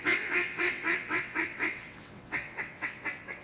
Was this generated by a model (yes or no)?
yes